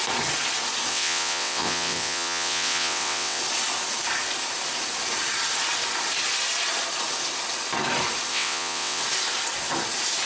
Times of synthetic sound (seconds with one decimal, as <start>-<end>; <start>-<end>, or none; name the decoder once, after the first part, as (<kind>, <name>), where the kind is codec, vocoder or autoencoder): 0.9-3.4 (vocoder, WaveNeXt); 8.3-9.0